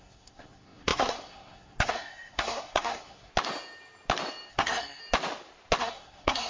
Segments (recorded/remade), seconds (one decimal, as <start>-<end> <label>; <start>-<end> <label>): 0.0-3.3 remade; 3.3-4.5 recorded; 4.5-5.0 remade; 5.0-5.8 recorded; 5.8-6.5 remade